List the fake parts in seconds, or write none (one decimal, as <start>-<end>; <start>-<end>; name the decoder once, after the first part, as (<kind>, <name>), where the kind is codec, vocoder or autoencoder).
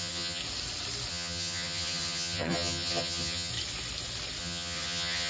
0.0-0.4 (vocoder, HiFi-GAN); 1.1-3.5; 4.4-5.3